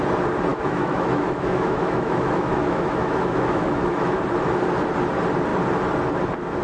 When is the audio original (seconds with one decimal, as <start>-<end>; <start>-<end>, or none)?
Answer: 0.0-0.5; 4.2-6.6